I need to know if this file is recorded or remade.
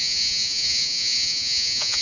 remade